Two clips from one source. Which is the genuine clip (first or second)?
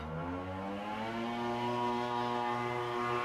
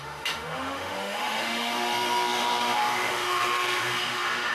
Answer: first